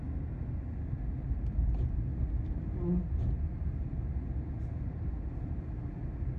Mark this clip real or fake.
real